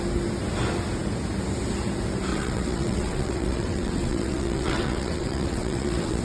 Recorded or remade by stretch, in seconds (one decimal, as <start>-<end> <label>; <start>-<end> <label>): 0.0-2.3 recorded; 2.3-6.2 remade